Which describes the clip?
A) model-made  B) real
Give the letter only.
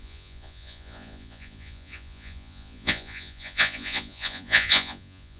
A